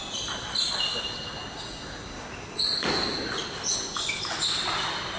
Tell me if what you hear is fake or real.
real